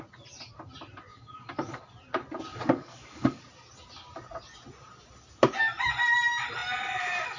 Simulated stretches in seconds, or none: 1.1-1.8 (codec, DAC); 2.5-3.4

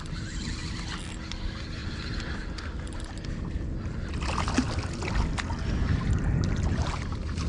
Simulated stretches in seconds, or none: none

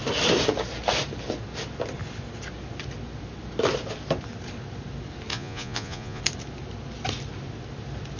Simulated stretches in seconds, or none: 5.3-6.2 (vocoder, Vocos)

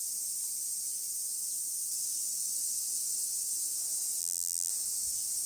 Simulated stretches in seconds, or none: 4.2-4.7 (vocoder, BigVGAN v2)